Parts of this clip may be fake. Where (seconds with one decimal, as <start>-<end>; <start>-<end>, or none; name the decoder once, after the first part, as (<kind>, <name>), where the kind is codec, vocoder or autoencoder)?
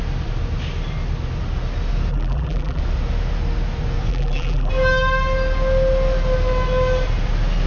2.1-2.8 (vocoder, BigVGAN v2); 4.1-4.7